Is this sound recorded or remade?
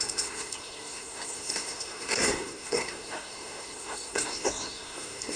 remade